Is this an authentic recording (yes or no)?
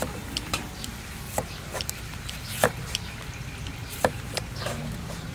no